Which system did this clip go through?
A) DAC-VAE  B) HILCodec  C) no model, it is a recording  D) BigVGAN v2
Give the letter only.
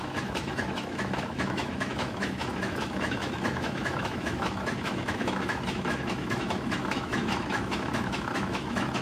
A